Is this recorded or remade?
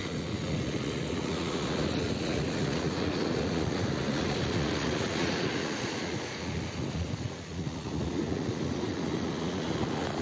remade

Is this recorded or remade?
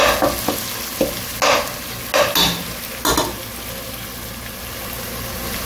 recorded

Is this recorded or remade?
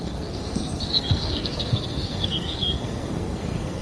remade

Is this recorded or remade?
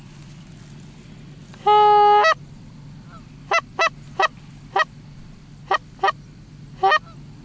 recorded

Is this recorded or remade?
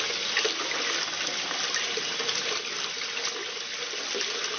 recorded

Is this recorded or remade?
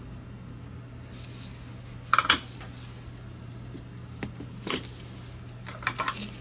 recorded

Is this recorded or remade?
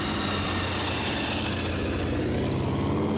recorded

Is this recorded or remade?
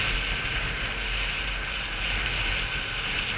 recorded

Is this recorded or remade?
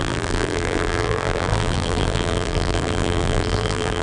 remade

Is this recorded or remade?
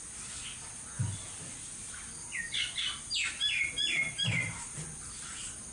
recorded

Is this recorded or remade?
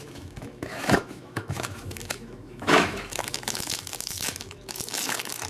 remade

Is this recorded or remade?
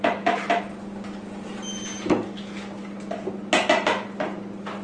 recorded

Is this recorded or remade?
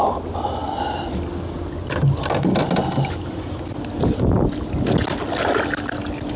recorded